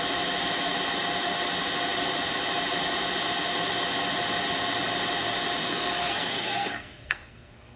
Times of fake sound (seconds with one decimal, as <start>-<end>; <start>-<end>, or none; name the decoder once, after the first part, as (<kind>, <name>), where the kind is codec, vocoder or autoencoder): 5.6-7.8 (codec, SNAC)